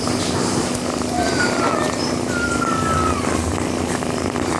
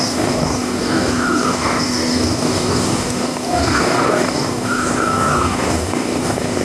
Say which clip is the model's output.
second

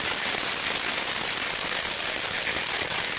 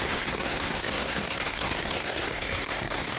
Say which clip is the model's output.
second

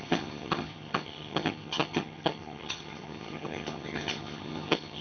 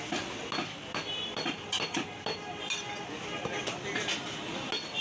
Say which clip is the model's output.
first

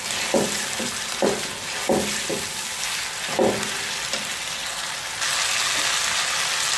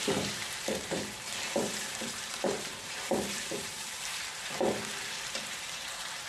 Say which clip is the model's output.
second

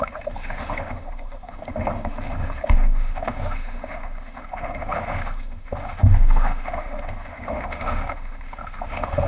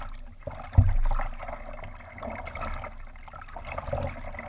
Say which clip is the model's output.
first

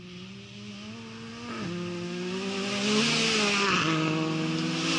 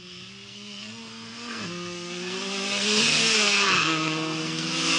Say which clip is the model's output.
second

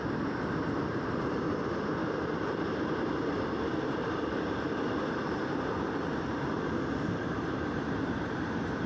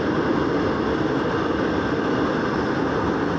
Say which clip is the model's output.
first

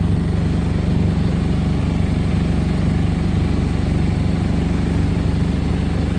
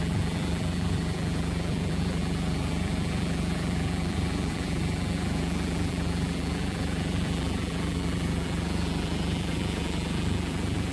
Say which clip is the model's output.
second